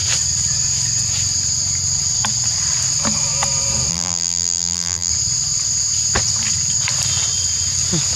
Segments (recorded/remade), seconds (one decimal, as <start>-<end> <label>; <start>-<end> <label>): 0.0-3.9 recorded; 3.9-5.1 remade; 5.1-8.2 recorded